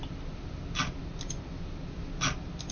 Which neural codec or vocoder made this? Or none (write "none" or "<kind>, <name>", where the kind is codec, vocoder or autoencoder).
none